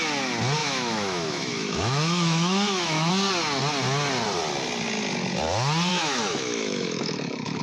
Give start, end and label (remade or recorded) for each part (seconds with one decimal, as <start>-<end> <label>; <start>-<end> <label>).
0.0-0.6 recorded; 0.6-3.1 remade; 3.1-5.9 recorded; 5.9-7.6 remade